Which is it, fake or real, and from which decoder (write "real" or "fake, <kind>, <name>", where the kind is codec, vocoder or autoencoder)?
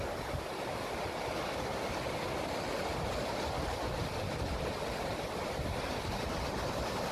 real